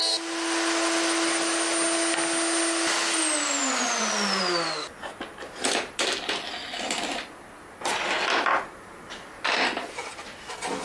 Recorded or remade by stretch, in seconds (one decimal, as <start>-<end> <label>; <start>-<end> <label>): 0.0-3.6 recorded; 3.6-4.4 remade; 4.4-10.8 recorded